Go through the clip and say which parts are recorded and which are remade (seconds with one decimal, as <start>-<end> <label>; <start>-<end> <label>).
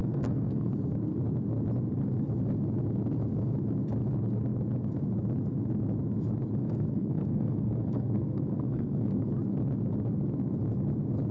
0.0-0.7 remade; 0.7-6.6 recorded; 6.6-9.3 remade; 9.3-11.3 recorded